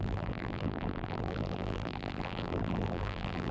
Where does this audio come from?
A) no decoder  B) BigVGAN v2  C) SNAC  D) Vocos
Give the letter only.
B